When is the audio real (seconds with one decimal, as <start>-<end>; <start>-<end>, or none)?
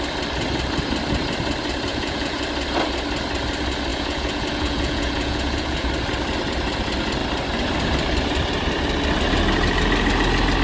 0.0-1.9; 2.4-3.9; 5.9-10.6